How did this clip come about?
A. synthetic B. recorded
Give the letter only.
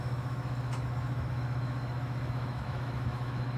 A